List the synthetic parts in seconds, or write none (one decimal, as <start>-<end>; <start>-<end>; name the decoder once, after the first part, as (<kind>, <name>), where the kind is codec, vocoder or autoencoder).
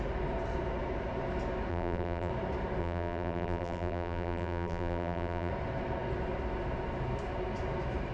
1.7-2.3 (vocoder, BigVGAN v2); 2.8-5.5